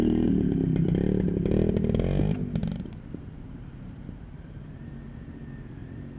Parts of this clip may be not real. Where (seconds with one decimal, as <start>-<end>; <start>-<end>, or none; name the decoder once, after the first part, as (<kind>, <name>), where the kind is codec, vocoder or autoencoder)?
2.6-4.9 (vocoder, BigVGAN v2)